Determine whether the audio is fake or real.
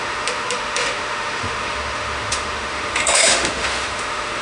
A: fake